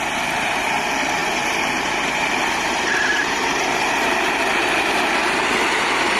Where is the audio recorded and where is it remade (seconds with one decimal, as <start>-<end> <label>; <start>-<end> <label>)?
0.0-6.2 recorded